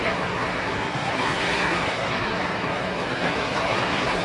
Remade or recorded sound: remade